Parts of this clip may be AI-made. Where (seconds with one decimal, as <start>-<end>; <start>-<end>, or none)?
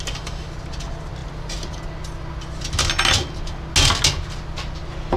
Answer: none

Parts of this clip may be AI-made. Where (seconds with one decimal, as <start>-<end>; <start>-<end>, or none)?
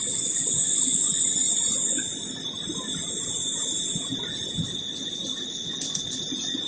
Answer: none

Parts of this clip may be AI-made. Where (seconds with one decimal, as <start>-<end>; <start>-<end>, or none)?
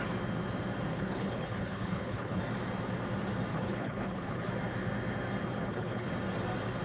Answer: 0.9-2.4; 3.5-4.5; 5.6-6.1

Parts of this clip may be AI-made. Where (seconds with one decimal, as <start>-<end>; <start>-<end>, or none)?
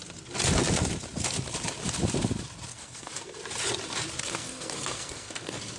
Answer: 2.7-3.3; 4.2-5.8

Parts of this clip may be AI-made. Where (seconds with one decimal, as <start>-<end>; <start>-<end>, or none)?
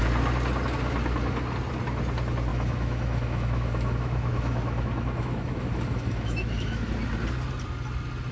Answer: 2.5-6.9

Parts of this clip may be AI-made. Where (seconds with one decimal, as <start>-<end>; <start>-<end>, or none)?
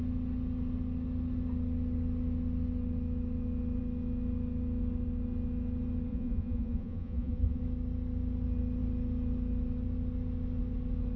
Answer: 6.1-7.6